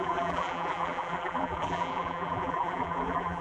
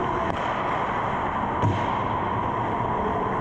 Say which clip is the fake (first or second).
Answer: first